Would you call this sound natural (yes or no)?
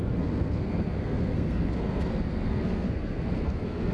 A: no